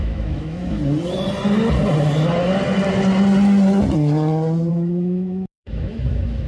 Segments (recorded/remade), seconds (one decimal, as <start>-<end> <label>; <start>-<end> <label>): 0.0-0.8 remade; 0.8-4.7 recorded; 4.7-6.5 remade